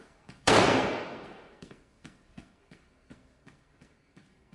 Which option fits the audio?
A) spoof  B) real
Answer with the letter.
A